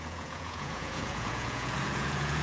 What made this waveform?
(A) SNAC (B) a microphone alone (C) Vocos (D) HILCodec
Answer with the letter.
C